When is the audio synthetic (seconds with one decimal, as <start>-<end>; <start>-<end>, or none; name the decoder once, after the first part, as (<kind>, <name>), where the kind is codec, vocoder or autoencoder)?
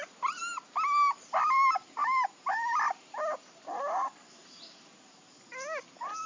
none